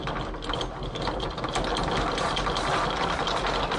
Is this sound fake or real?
real